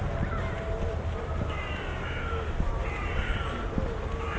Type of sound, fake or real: real